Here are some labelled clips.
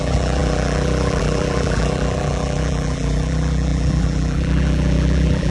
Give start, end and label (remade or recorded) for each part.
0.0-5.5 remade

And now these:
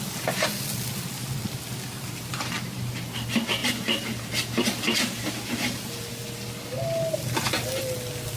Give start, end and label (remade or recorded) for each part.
0.0-8.4 recorded

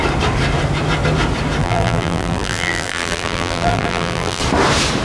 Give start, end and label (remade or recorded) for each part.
0.0-1.6 recorded; 1.6-4.4 remade; 4.4-5.0 recorded

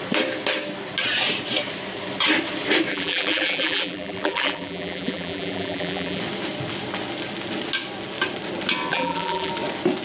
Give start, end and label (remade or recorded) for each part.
0.0-2.9 recorded; 2.9-6.2 remade; 6.2-8.9 recorded; 8.9-9.5 remade; 9.5-10.0 recorded

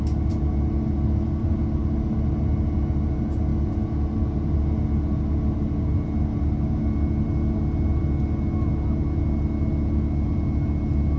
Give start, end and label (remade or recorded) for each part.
0.0-11.2 recorded

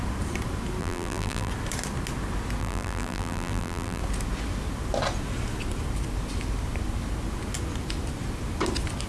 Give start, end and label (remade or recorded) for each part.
0.0-0.8 recorded; 0.8-1.5 remade; 1.5-2.6 recorded; 2.6-4.0 remade; 4.0-9.1 recorded